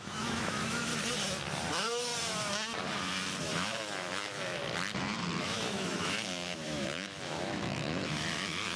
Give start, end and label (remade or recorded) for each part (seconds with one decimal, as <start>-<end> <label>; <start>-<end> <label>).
0.0-0.9 remade; 0.9-1.7 recorded; 1.7-2.1 remade; 2.1-3.4 recorded; 3.4-4.6 remade; 4.6-5.4 recorded; 5.4-8.8 remade